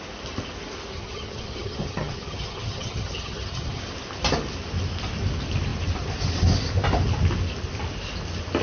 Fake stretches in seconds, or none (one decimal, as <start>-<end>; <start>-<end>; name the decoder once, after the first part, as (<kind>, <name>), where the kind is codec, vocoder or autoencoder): 0.9-3.8 (vocoder, HiFi-GAN)